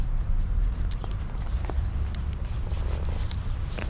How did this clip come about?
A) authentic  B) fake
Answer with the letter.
B